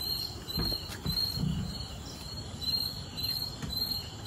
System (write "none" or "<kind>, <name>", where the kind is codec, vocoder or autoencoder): vocoder, BigVGAN v2